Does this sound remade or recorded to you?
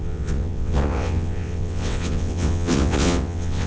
remade